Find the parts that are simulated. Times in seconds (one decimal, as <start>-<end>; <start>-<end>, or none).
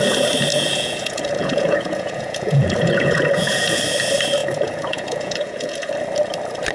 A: 0.5-3.8; 4.4-5.9